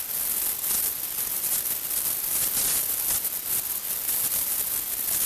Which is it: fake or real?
real